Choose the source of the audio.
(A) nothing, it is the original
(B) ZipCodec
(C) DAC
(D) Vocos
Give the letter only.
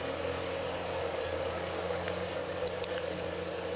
C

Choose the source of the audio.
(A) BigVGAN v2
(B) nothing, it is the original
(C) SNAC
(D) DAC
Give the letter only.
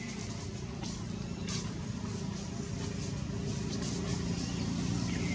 B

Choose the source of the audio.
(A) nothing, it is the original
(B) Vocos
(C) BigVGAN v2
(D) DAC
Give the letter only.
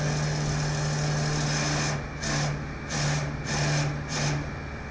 A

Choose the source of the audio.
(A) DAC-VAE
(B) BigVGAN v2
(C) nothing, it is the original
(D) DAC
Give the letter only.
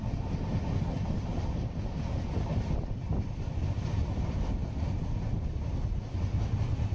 C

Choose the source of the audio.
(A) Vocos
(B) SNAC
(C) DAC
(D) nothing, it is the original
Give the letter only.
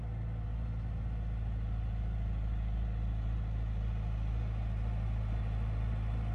D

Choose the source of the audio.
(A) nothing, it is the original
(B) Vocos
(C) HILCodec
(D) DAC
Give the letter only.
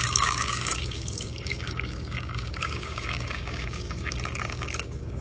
D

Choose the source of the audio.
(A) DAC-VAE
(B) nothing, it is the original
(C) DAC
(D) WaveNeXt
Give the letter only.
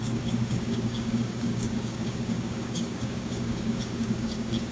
C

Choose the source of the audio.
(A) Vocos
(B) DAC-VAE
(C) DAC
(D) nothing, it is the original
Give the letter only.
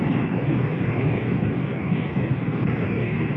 C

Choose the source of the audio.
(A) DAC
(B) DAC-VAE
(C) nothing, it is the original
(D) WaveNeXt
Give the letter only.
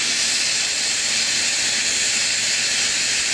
C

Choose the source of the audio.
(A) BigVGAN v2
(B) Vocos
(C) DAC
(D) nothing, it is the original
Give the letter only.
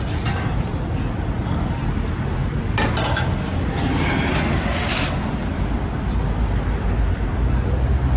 D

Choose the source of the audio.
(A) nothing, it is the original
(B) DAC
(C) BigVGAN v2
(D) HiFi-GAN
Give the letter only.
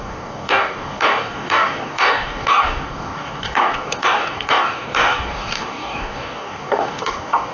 B